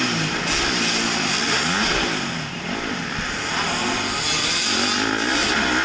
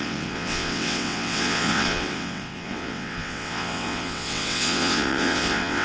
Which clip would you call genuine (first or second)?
first